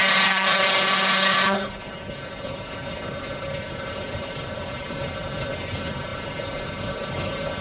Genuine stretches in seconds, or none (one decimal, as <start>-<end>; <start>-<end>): none